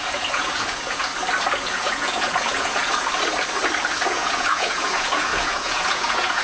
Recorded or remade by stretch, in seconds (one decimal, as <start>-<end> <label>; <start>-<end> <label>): 0.0-1.1 remade; 1.1-1.7 recorded; 1.7-2.8 remade; 2.8-3.9 recorded; 3.9-6.4 remade